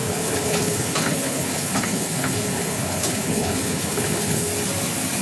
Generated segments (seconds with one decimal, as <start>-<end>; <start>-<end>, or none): 0.0-4.5